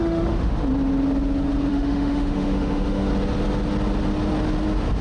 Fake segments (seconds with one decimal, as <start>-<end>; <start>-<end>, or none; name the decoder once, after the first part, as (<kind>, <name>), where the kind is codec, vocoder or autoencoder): 0.0-0.5 (autoencoder, DAC-VAE); 1.7-3.1